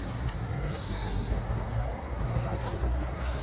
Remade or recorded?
remade